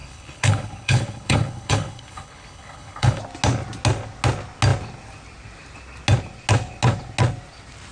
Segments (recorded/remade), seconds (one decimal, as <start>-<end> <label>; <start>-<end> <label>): 0.0-3.2 remade; 3.2-7.9 recorded